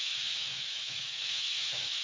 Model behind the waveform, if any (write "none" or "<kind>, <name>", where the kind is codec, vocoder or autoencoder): autoencoder, DAC-VAE